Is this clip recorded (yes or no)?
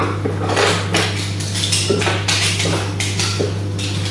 yes